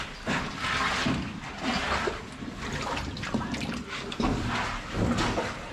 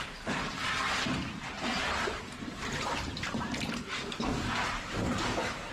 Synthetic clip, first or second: second